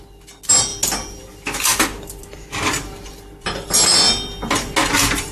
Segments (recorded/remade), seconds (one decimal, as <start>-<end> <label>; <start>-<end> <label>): 0.0-5.3 recorded